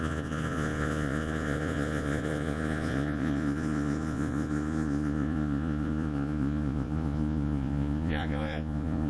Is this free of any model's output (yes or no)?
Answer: no